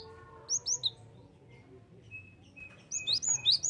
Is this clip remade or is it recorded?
recorded